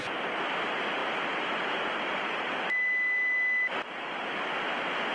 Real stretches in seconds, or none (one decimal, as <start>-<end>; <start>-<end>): 0.0-5.1